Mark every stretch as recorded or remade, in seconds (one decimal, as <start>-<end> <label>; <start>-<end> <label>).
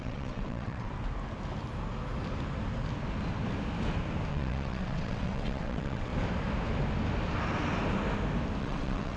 0.0-0.9 remade; 0.9-4.3 recorded; 4.3-6.1 remade; 6.1-8.6 recorded; 8.6-9.2 remade